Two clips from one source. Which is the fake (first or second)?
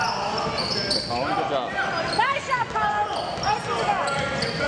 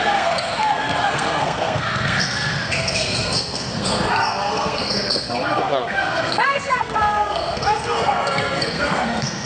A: second